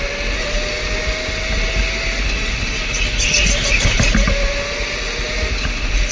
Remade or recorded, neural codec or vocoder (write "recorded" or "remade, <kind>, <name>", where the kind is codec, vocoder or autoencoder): recorded